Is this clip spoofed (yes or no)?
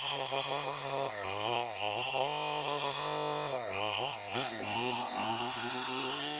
yes